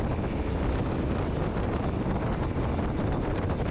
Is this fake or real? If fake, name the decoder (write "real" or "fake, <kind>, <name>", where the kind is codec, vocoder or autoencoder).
real